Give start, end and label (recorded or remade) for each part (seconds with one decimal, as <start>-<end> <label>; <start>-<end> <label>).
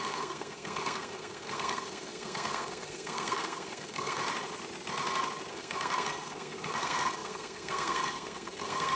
0.0-4.2 remade; 4.2-5.5 recorded; 5.5-9.0 remade